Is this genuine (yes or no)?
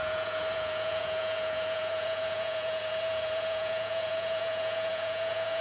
no